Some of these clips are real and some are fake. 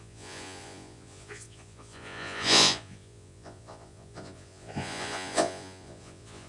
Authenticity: fake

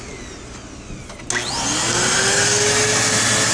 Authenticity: real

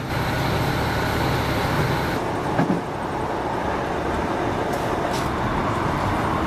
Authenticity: real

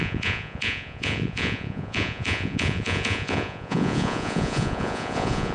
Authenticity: fake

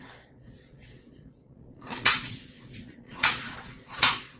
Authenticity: fake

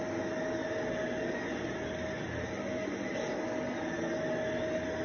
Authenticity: real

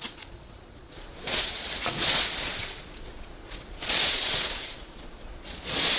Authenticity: fake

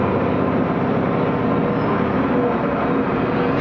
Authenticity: real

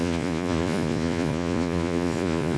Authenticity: fake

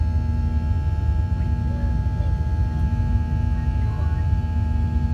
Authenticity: real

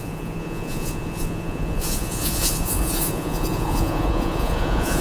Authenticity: fake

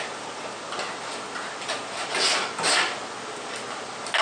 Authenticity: real